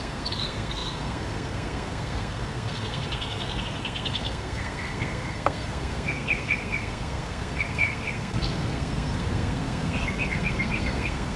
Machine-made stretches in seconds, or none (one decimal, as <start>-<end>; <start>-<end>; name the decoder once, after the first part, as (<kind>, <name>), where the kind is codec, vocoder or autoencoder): 0.0-11.4 (codec, SNAC)